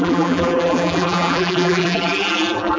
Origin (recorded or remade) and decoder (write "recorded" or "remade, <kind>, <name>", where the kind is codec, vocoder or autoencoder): remade, vocoder, BigVGAN v2